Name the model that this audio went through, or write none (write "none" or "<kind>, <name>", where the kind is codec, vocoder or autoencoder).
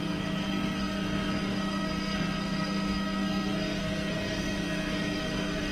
codec, SNAC